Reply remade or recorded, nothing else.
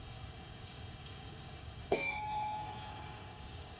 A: remade